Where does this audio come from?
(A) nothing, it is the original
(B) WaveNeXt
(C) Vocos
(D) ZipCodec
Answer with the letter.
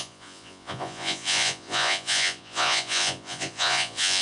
C